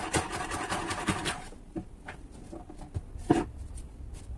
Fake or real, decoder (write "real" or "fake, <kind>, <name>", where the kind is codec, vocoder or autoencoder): real